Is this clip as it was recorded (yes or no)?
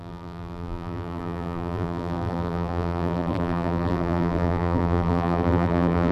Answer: no